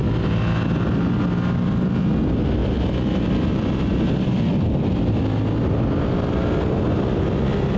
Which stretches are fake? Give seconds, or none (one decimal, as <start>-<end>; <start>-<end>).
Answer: 2.6-5.1